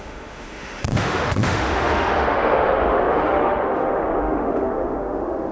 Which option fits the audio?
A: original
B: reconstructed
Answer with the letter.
B